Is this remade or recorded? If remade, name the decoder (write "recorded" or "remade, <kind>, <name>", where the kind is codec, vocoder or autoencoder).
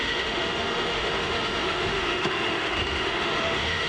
remade, autoencoder, DAC-VAE